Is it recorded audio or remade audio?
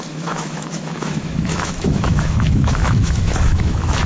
remade